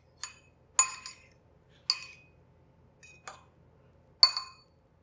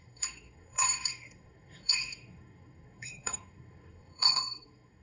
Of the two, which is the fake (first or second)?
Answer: second